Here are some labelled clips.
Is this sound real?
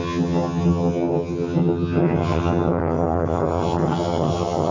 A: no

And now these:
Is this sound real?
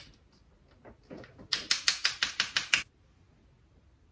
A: yes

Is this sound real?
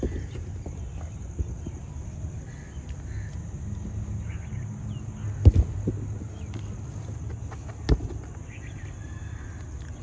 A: yes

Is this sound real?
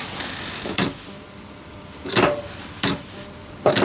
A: yes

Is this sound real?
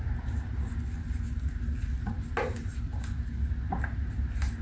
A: yes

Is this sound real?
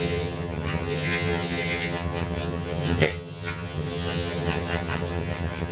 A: no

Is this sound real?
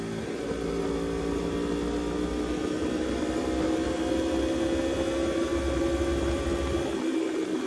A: yes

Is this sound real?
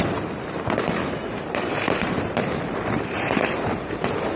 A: no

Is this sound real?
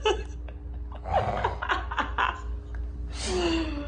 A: yes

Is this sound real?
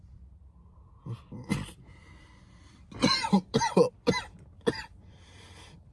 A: yes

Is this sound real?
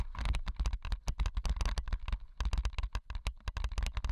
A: yes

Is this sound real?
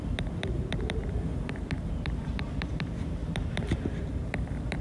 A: no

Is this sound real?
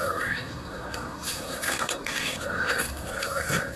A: no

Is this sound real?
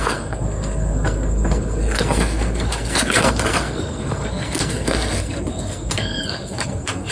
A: no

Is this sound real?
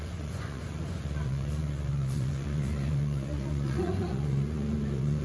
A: no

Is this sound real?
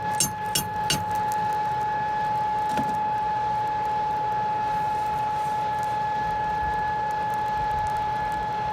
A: yes